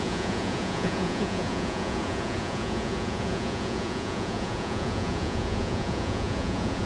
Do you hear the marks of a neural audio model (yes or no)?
yes